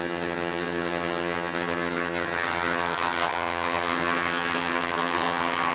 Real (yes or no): no